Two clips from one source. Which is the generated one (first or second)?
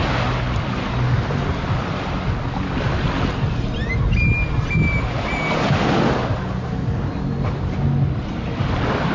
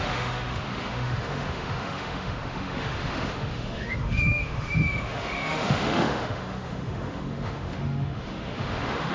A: second